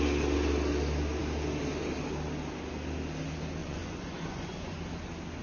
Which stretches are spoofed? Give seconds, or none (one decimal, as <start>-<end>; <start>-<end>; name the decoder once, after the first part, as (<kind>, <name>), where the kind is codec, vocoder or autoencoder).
3.6-4.8 (vocoder, Vocos)